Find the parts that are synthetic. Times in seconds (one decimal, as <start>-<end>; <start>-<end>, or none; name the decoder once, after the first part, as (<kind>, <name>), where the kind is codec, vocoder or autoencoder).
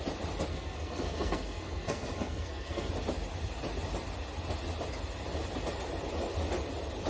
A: 0.5-2.9 (codec, SNAC)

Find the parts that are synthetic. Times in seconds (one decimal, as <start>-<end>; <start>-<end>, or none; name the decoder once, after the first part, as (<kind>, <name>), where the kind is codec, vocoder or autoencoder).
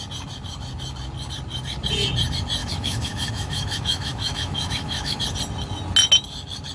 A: 2.6-5.2 (autoencoder, DAC-VAE)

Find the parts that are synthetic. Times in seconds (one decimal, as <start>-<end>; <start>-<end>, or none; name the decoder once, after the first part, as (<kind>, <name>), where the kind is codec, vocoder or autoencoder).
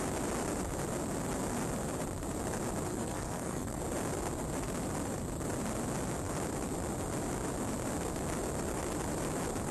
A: 2.9-3.8 (codec, SNAC)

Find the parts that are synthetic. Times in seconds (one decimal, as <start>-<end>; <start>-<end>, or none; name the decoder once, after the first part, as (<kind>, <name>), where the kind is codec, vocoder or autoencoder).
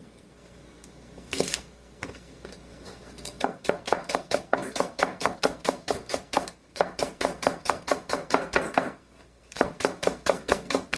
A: 0.0-11.0 (codec, SNAC)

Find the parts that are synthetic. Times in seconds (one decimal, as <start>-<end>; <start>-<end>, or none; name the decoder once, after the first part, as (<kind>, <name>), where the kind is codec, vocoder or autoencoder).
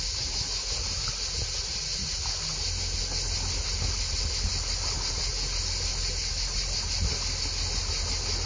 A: none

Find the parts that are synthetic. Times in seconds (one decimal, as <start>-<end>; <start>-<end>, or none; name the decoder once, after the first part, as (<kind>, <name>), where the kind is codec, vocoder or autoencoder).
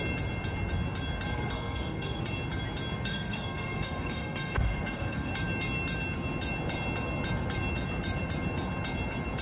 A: 1.3-2.2 (codec, SNAC); 3.1-5.3